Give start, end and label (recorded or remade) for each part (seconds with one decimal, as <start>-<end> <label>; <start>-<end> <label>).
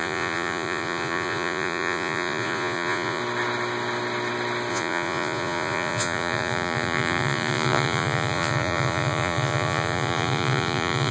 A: 0.0-3.2 remade; 3.2-4.7 recorded; 4.7-11.1 remade